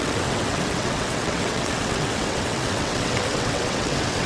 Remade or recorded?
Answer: remade